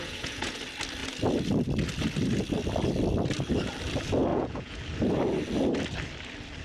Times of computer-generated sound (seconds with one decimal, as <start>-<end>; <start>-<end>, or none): 0.0-0.6; 4.3-4.8